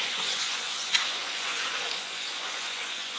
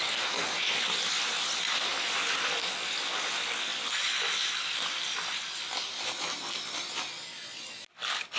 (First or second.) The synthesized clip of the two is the first